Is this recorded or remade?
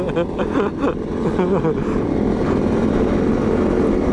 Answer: recorded